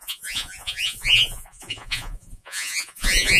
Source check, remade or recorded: remade